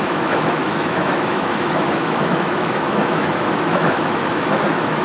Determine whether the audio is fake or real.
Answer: fake